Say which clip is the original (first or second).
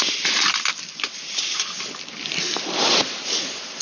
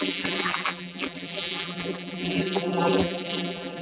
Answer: first